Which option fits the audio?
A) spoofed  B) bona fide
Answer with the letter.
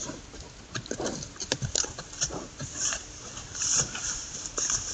A